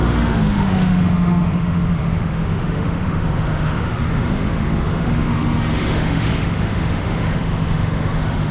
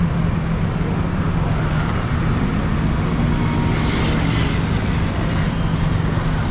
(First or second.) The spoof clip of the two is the first